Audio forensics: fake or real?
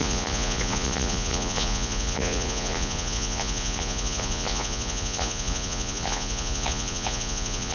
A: fake